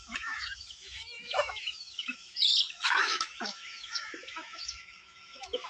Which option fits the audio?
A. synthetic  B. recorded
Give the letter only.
A